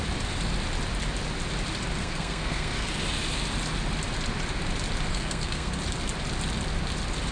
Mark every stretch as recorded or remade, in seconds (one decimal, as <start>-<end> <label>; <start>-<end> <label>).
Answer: 0.0-2.0 recorded; 2.0-2.9 remade; 2.9-5.1 recorded; 5.1-5.8 remade; 5.8-7.3 recorded